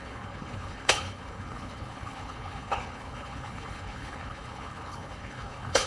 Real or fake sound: fake